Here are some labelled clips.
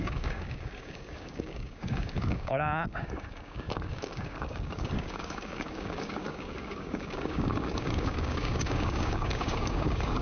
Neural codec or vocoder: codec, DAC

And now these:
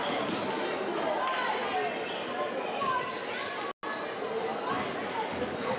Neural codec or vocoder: none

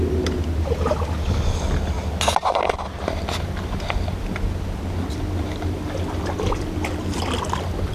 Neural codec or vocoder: none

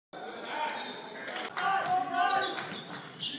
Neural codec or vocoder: none